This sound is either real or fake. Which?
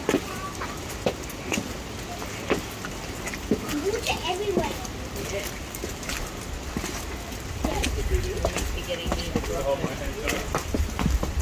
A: real